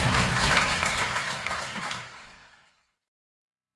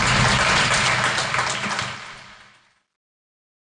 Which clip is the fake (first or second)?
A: first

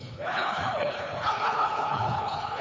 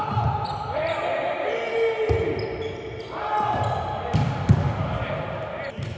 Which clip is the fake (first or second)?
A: first